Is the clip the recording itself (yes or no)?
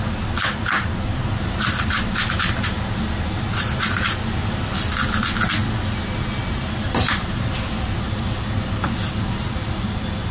yes